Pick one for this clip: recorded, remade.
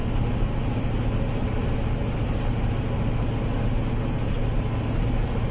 recorded